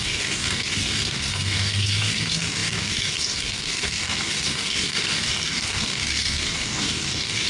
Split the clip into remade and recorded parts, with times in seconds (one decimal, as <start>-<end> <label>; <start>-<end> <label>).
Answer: 0.0-7.5 remade